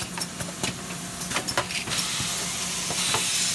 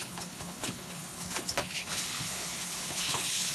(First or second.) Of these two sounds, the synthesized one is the second